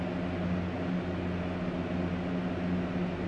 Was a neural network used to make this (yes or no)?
no